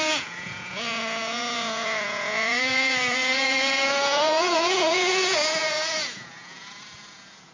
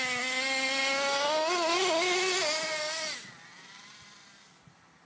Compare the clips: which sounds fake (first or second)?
first